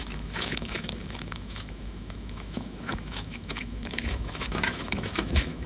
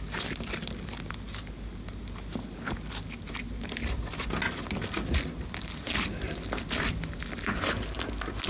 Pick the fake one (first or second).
first